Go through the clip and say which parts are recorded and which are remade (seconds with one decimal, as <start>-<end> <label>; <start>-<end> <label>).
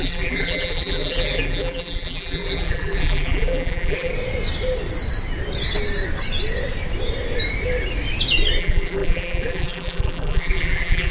0.0-4.1 remade; 4.1-8.6 recorded; 8.6-11.1 remade